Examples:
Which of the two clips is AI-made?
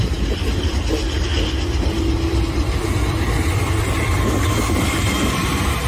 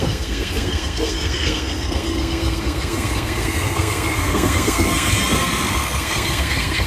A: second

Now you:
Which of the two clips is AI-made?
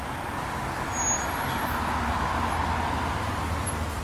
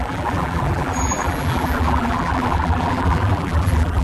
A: second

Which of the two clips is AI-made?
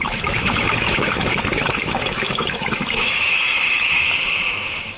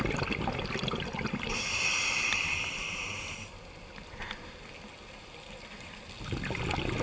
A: first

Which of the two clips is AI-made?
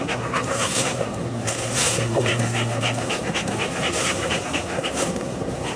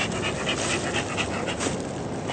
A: first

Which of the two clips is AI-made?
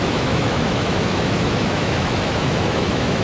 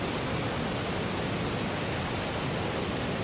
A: first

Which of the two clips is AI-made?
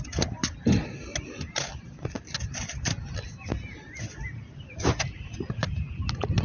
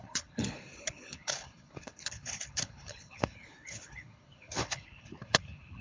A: second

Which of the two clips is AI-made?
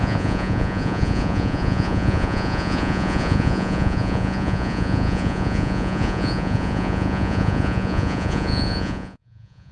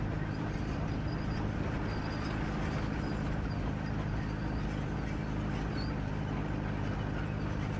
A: first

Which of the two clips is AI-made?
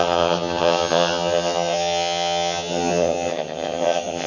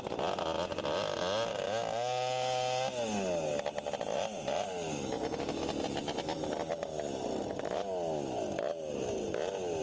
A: first